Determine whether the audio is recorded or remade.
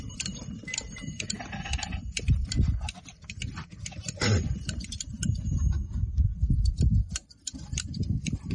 remade